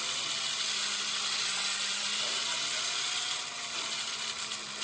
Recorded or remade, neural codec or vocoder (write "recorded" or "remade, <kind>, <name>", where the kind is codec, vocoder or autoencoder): recorded